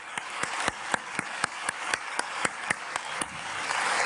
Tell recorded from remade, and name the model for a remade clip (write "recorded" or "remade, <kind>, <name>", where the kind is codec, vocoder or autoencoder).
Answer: remade, codec, DAC